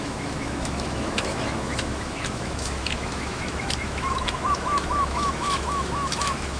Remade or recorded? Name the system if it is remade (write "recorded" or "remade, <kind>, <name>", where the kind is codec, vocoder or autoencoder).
remade, autoencoder, DAC-VAE